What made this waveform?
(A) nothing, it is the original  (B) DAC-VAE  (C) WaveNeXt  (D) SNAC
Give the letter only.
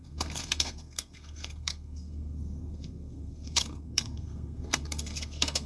D